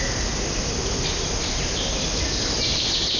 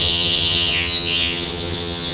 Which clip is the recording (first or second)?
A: first